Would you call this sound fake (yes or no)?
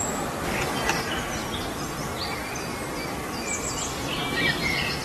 no